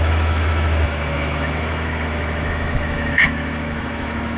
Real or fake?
fake